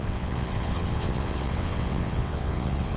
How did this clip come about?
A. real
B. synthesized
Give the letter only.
B